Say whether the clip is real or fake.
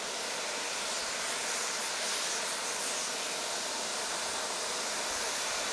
real